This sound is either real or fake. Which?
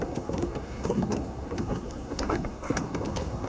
fake